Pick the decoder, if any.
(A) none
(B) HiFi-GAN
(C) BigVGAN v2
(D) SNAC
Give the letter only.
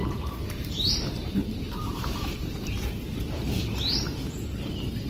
C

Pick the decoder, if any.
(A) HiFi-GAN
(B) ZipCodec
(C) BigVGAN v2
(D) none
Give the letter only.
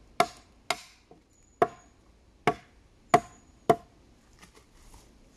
D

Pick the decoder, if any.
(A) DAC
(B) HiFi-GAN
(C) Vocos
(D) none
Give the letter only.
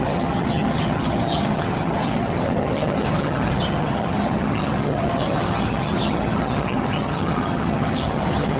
B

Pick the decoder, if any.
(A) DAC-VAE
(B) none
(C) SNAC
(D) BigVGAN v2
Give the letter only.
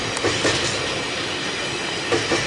B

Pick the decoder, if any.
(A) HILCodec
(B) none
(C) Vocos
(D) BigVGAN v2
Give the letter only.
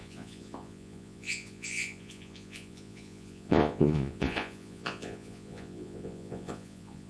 C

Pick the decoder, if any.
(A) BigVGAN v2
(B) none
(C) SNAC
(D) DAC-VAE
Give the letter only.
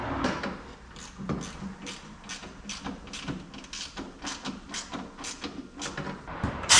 B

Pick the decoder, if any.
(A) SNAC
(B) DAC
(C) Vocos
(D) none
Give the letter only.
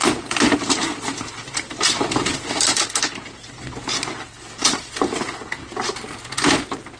D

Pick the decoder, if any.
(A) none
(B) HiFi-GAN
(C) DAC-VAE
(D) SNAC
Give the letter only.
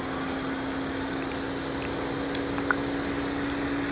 A